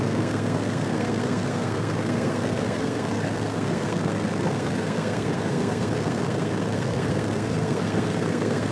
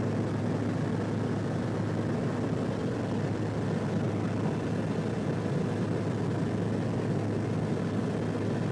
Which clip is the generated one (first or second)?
first